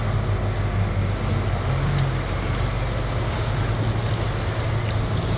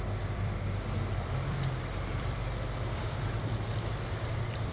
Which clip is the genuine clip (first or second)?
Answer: first